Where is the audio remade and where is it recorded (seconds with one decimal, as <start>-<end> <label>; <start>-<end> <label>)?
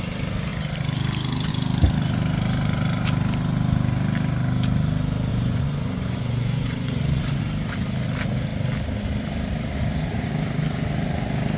0.0-5.3 recorded; 5.3-7.4 remade; 7.4-11.6 recorded